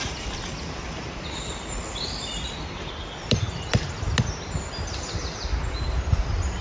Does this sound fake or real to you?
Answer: real